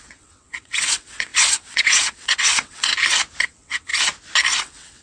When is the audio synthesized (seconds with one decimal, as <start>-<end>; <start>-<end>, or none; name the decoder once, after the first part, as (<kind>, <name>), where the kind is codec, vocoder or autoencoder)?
0.0-2.9 (vocoder, WaveNeXt); 3.4-3.9; 4.6-5.0